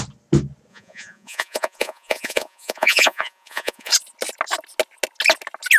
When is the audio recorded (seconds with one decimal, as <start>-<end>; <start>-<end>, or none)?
0.0-0.7; 3.9-5.8